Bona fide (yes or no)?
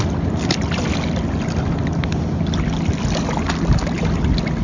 yes